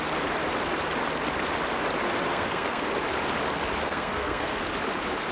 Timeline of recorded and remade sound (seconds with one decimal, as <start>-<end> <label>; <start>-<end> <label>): 0.0-2.3 recorded; 2.3-2.9 remade; 2.9-3.8 recorded; 3.8-4.6 remade; 4.6-5.3 recorded